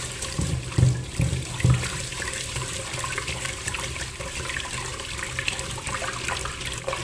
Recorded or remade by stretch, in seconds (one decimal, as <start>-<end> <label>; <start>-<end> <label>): 0.0-7.0 recorded